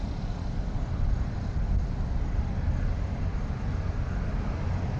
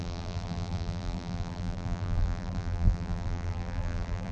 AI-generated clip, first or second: second